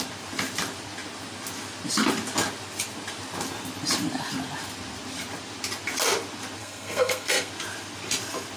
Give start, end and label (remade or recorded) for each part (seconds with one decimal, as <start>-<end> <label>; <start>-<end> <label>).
0.0-6.6 recorded; 6.6-7.5 remade; 7.5-8.6 recorded